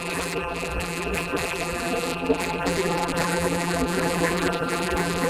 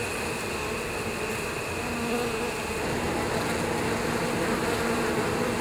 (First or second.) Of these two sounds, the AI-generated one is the first